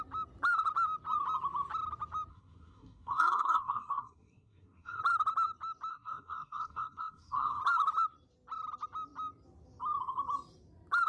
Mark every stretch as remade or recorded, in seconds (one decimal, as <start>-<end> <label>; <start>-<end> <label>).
0.0-2.3 recorded; 2.3-5.0 remade; 5.0-5.9 recorded; 5.9-7.6 remade; 7.6-11.1 recorded